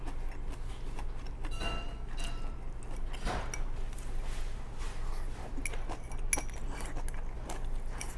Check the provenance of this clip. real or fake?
real